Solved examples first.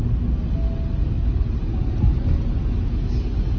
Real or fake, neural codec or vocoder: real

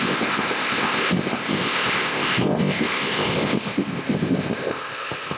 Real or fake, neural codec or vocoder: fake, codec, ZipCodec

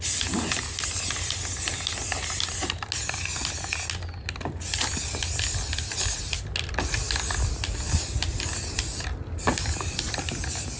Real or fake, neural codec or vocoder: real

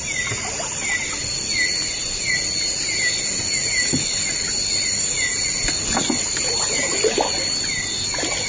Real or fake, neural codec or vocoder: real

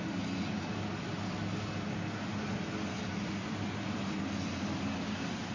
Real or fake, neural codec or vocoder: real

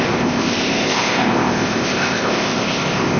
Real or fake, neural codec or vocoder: fake, codec, ZipCodec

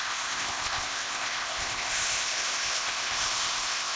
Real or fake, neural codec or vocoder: fake, codec, ZipCodec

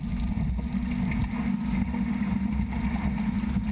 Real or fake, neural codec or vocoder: real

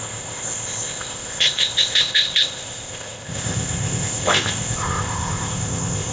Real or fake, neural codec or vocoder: fake, codec, ZipCodec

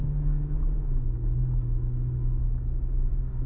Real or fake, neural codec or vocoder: real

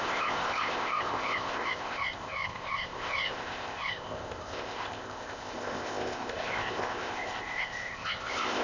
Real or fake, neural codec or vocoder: fake, codec, ZipCodec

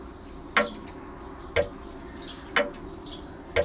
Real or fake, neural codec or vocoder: real